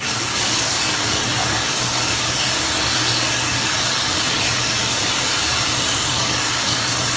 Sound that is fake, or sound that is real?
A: fake